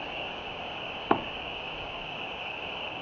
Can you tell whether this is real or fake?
fake